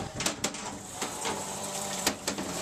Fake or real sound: fake